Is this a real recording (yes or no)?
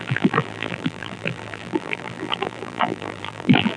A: no